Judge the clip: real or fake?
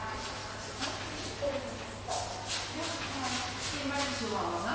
real